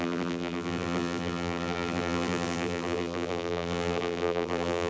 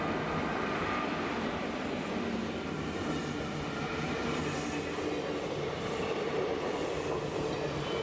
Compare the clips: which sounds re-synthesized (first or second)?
first